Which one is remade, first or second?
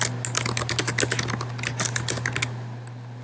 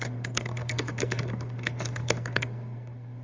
second